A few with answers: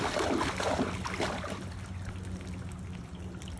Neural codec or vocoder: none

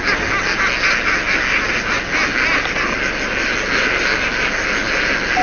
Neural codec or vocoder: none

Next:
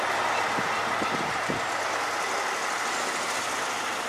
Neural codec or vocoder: none